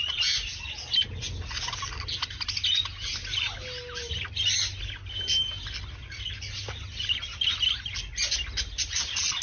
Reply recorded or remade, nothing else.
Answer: recorded